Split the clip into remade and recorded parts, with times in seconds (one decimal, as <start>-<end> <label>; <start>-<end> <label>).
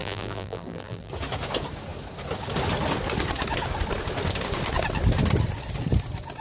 0.0-1.1 remade; 1.1-6.4 recorded